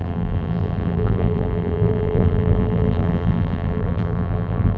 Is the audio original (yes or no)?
no